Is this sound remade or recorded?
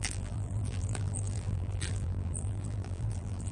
remade